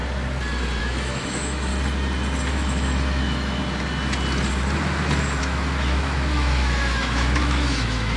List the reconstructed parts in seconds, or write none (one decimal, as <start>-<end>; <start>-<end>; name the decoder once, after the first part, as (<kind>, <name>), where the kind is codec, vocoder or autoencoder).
0.8-1.7 (autoencoder, DAC-VAE); 2.5-3.6; 5.4-8.2